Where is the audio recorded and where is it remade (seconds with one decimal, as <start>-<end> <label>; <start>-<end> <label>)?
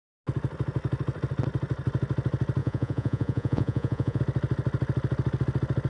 0.0-2.6 recorded; 2.6-4.2 remade; 4.2-5.9 recorded